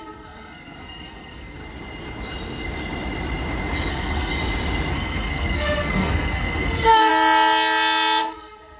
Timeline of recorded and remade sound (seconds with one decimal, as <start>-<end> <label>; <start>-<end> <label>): 0.0-1.6 remade; 1.6-3.9 recorded; 3.9-4.3 remade; 4.3-4.9 recorded; 4.9-7.1 remade; 7.1-8.2 recorded; 8.2-8.8 remade